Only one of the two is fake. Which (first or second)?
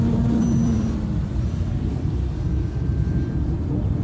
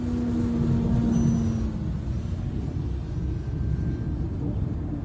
first